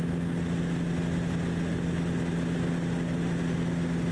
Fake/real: real